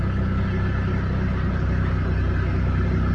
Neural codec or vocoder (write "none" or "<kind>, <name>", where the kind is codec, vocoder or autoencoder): none